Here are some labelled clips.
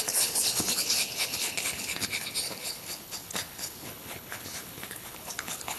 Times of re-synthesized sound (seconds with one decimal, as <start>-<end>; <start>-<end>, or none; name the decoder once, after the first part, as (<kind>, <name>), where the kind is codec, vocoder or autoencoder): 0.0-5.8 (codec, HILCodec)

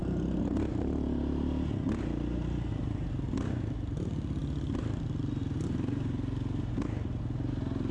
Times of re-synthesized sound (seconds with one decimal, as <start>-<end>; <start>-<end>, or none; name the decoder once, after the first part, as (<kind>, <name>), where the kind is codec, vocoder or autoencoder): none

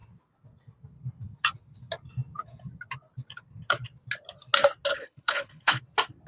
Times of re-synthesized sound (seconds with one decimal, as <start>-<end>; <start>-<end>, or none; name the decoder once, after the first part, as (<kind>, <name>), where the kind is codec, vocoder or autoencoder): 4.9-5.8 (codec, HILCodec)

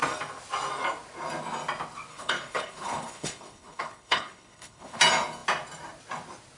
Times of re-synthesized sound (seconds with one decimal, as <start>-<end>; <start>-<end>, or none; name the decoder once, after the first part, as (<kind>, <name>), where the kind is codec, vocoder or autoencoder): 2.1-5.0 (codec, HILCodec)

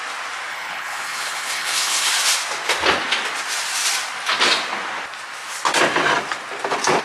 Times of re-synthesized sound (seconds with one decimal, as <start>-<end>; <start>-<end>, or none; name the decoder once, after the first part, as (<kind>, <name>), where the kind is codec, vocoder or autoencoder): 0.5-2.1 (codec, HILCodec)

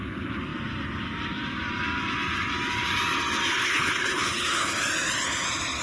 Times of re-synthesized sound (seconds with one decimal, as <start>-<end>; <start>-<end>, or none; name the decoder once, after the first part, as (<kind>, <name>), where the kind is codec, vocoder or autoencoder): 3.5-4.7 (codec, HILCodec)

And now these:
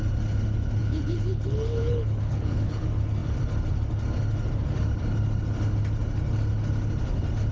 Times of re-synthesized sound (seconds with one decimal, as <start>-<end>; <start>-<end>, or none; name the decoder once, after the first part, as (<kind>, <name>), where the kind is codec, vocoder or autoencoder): 0.8-2.8 (codec, HILCodec)

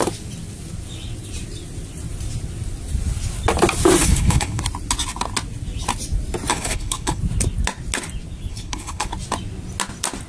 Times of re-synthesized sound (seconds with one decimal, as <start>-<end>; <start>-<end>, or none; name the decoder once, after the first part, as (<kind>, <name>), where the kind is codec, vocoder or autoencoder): 4.0-4.6 (codec, HILCodec); 6.5-7.2; 8.5-9.1